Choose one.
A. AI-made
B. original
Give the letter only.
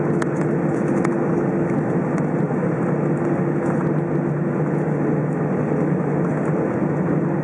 B